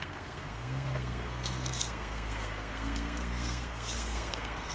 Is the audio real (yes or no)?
no